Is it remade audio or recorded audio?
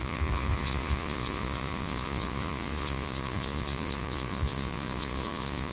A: remade